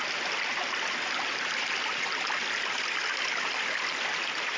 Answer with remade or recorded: recorded